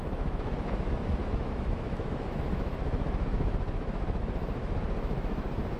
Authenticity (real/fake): fake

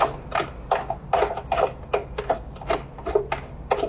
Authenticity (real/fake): real